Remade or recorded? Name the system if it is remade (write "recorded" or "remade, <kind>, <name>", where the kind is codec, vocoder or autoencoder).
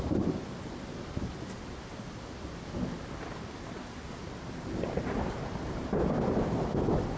recorded